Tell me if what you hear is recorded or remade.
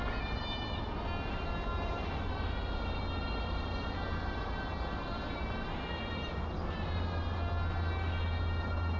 recorded